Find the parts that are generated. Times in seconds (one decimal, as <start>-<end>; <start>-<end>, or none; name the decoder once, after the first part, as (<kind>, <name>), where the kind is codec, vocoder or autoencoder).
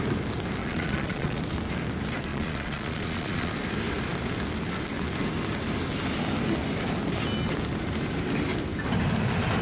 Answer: 0.6-1.4 (vocoder, Vocos); 2.3-3.5